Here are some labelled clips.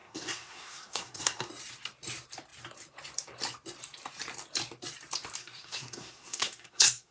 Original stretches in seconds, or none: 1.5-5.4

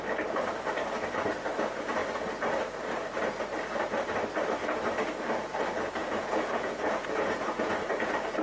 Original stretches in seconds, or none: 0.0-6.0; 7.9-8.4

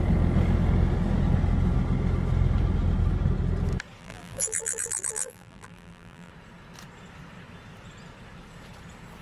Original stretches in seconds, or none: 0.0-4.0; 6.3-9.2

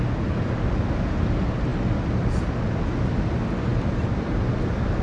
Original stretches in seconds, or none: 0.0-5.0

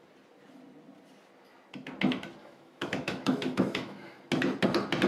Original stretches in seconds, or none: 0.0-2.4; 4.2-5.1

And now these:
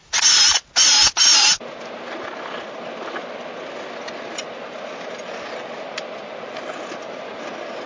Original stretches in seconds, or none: 0.0-7.9